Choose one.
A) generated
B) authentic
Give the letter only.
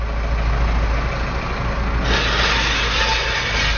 B